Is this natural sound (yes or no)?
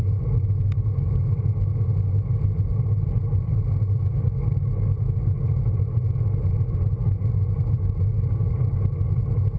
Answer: yes